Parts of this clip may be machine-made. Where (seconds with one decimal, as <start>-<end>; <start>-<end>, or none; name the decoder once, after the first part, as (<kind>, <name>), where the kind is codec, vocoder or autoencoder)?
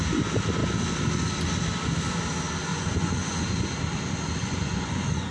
2.7-3.5 (vocoder, Vocos); 4.4-5.3